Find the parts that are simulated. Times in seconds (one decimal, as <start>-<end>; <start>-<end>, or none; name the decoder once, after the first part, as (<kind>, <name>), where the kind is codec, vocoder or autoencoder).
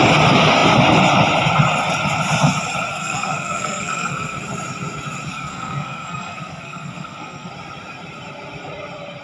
2.9-4.4 (codec, SNAC); 5.3-7.5